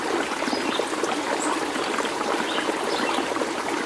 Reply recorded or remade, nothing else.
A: recorded